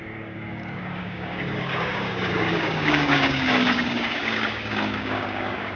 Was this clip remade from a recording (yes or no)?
yes